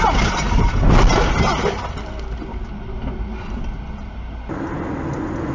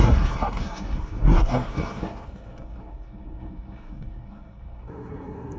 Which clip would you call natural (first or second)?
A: first